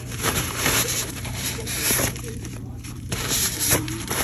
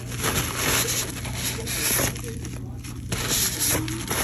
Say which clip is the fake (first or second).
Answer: first